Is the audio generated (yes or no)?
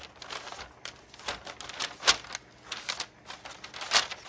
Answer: no